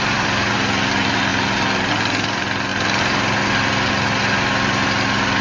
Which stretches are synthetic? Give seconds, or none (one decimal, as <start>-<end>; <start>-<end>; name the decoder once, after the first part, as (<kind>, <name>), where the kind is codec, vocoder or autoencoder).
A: none